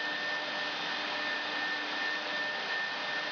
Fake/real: real